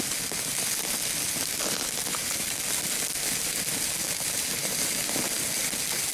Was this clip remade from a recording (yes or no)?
no